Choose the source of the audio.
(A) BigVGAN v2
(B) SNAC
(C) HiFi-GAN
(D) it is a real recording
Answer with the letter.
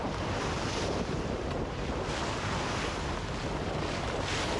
D